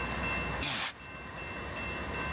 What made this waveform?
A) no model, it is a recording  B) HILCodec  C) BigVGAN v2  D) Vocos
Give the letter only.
A